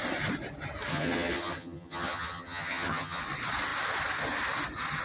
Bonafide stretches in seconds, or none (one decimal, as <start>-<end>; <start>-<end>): 0.0-0.9; 3.2-5.0